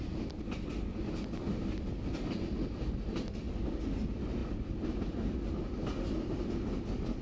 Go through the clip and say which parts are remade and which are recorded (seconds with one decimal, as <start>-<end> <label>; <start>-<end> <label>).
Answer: 0.0-7.2 recorded